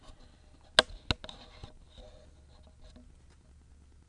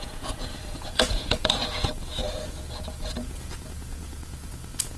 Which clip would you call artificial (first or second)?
second